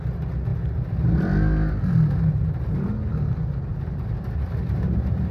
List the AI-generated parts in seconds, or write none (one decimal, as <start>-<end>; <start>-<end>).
3.7-5.3